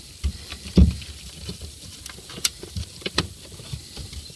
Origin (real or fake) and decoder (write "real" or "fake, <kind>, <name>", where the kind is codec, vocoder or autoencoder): fake, vocoder, BigVGAN v2